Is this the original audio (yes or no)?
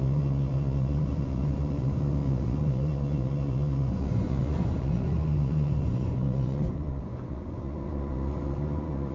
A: no